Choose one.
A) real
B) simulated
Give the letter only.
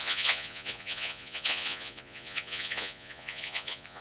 B